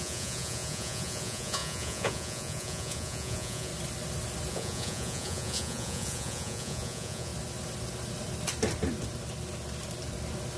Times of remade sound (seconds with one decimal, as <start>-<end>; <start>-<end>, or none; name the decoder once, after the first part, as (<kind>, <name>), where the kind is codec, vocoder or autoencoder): 0.0-3.7 (vocoder, Vocos); 4.5-7.3